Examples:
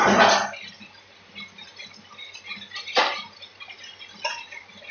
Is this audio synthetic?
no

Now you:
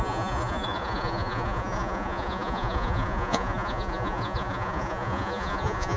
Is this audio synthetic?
yes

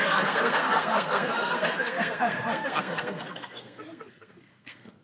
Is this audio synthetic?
yes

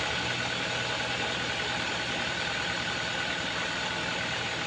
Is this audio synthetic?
no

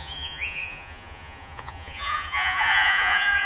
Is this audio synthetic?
yes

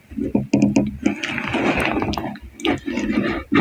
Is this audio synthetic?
no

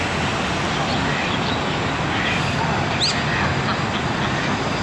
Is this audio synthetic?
no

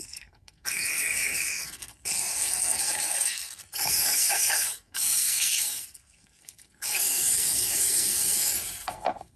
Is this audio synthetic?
yes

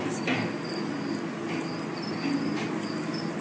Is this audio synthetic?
no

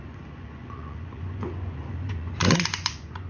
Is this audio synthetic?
yes